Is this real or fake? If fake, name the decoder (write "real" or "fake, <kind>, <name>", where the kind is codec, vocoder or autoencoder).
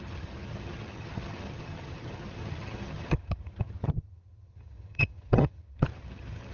fake, vocoder, HiFi-GAN